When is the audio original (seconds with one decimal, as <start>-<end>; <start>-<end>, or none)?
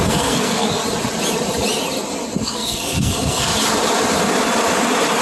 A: 0.8-2.4; 3.5-5.2